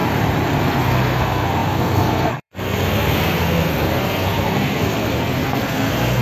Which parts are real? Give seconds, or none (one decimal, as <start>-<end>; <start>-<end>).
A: 0.0-0.6